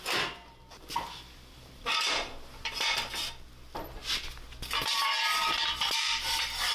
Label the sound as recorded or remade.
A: remade